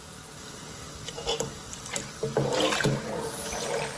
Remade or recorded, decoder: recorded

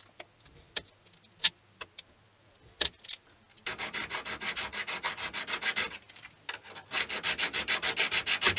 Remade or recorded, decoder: recorded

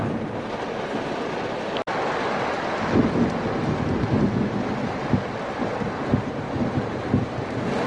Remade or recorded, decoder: recorded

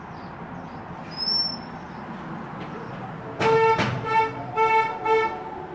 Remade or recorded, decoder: recorded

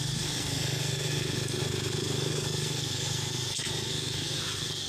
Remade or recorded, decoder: remade, codec, SNAC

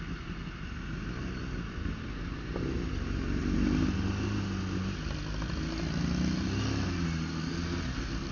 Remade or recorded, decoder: recorded